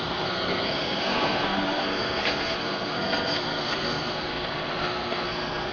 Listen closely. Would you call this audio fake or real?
fake